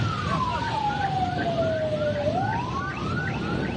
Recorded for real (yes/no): yes